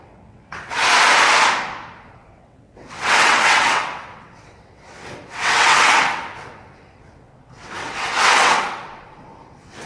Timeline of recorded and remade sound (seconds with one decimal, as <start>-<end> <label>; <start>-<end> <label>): 0.0-0.8 remade; 0.8-2.1 recorded; 2.1-9.9 remade